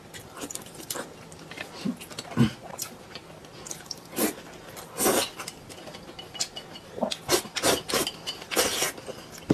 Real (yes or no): no